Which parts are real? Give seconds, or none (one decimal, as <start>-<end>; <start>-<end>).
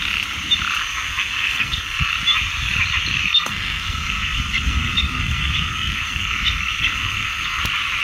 0.0-0.8; 2.1-3.2; 7.6-8.0